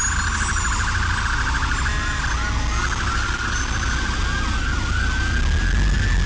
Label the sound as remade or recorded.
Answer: recorded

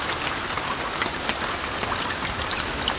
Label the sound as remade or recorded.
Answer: recorded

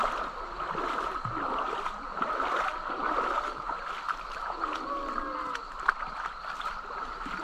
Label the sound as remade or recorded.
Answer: recorded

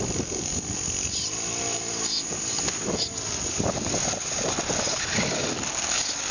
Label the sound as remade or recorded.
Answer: recorded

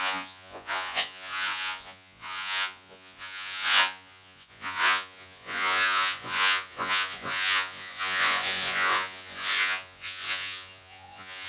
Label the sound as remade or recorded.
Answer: remade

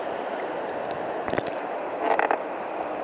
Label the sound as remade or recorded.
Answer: recorded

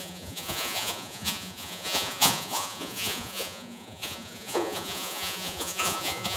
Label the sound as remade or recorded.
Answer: remade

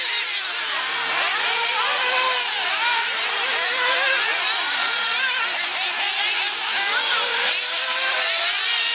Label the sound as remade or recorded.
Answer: recorded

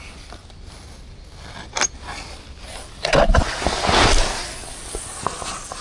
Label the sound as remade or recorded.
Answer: recorded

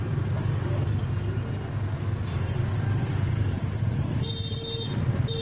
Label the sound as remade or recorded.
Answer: recorded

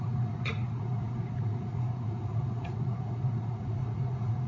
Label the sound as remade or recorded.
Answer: remade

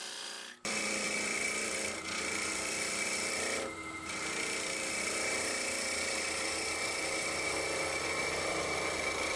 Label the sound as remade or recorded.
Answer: remade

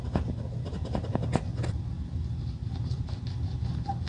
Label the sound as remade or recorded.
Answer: recorded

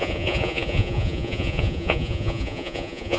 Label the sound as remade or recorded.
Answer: remade